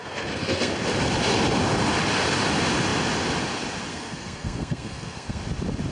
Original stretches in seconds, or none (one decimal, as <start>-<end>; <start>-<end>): 0.7-3.9; 5.4-5.9

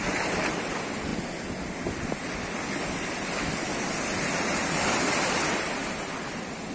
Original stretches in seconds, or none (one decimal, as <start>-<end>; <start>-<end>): 0.0-6.7

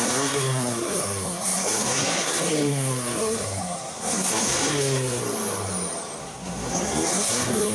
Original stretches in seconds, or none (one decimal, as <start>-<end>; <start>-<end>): 5.2-6.2

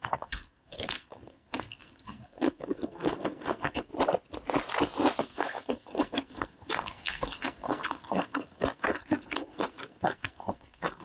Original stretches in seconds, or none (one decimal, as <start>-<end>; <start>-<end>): 3.9-5.2

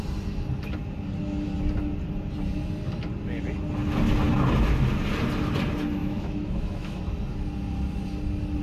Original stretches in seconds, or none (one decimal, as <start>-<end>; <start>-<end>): 0.0-6.0; 7.0-8.6

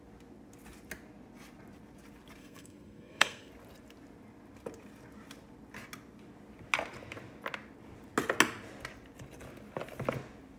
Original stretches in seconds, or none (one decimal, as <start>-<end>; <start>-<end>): 0.0-2.4; 3.5-10.6